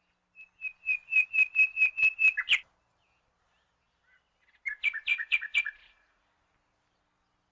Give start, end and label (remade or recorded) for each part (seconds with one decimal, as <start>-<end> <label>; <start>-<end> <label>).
0.0-5.1 recorded; 5.1-6.3 remade; 6.3-7.5 recorded